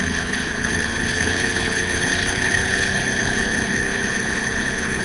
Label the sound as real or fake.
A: fake